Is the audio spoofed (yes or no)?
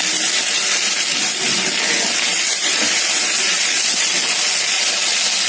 no